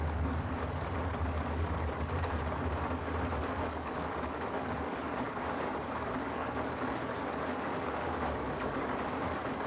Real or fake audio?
fake